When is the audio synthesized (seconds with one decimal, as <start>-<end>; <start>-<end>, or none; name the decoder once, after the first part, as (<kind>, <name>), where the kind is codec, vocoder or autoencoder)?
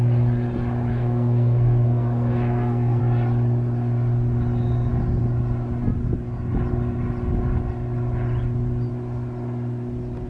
0.9-3.0 (codec, SNAC)